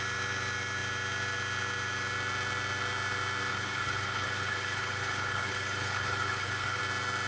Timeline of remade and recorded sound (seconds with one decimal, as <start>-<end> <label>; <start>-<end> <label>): 0.0-3.5 recorded; 3.5-6.8 remade; 6.8-7.3 recorded